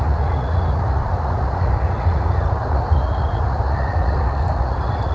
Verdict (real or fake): fake